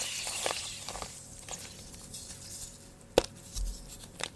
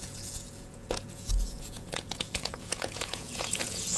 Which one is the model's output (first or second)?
second